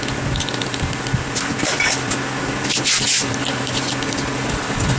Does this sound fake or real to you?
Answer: real